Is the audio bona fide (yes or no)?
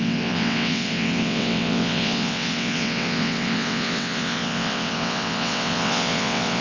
no